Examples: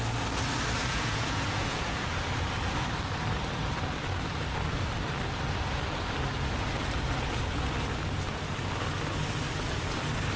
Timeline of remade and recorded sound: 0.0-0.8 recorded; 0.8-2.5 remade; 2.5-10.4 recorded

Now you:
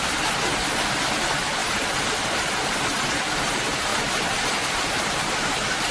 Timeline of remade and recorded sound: 0.0-1.6 recorded; 1.6-3.4 remade; 3.4-3.9 recorded; 3.9-4.9 remade; 4.9-5.9 recorded

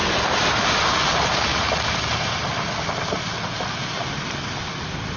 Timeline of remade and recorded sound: 0.0-5.2 recorded

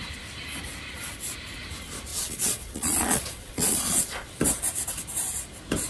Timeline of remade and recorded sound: 0.0-2.1 recorded; 2.1-4.3 remade; 4.3-5.9 recorded

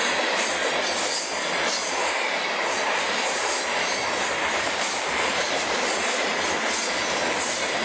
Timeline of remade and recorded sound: 0.0-1.8 recorded; 1.8-6.3 remade; 6.3-7.8 recorded

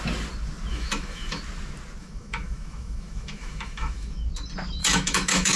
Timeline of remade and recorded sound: 0.0-0.7 recorded; 0.7-1.4 remade; 1.4-2.0 recorded; 2.0-4.3 remade; 4.3-4.8 recorded; 4.8-5.6 remade

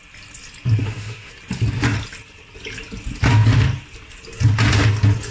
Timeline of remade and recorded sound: 0.0-0.8 recorded; 0.8-1.3 remade; 1.3-5.3 recorded